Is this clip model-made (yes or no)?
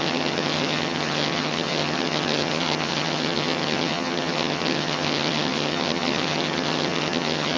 yes